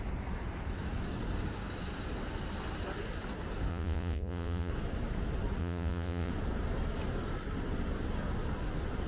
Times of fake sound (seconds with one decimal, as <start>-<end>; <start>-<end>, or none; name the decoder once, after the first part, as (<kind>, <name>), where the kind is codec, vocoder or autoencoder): 3.7-4.7 (vocoder, Vocos); 5.6-6.3